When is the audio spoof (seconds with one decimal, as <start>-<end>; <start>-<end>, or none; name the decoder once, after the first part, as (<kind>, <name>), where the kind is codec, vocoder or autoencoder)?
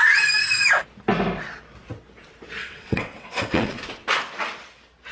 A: 2.6-3.8 (vocoder, WaveNeXt)